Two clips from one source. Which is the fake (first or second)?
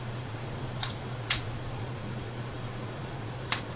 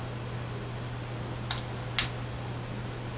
first